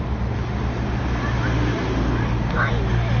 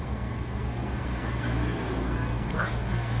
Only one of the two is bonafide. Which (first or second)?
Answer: first